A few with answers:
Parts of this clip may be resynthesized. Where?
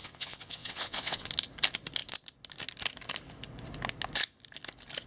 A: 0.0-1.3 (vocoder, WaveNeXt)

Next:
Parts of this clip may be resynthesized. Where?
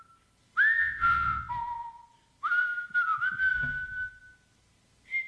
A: 0.8-1.5 (vocoder, WaveNeXt)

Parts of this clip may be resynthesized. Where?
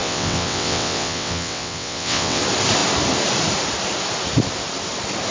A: 0.0-2.4 (vocoder, WaveNeXt)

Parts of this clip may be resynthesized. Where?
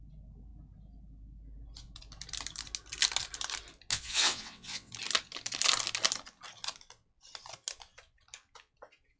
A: 3.9-4.9 (vocoder, WaveNeXt)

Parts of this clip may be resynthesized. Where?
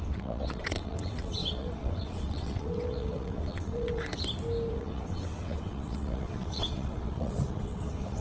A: 0.0-4.1 (vocoder, WaveNeXt); 4.7-8.2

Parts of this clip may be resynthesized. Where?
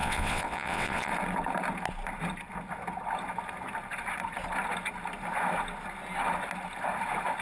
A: 0.0-1.1 (vocoder, WaveNeXt)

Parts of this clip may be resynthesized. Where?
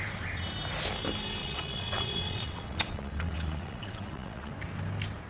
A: 1.4-4.5 (vocoder, WaveNeXt)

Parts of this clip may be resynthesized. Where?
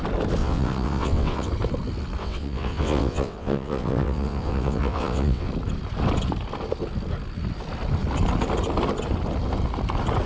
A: 0.4-1.5 (vocoder, WaveNeXt); 2.2-5.5